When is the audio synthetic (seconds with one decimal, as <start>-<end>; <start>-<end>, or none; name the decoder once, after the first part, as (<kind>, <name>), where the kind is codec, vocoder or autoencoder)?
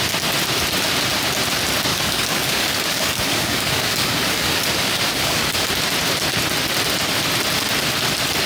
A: 1.9-5.7 (codec, DAC)